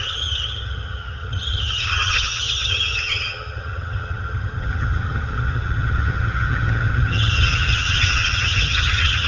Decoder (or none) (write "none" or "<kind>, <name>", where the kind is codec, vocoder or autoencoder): vocoder, HiFi-GAN